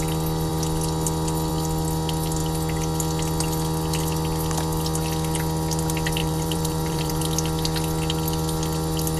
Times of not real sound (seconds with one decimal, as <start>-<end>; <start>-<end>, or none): 6.2-7.2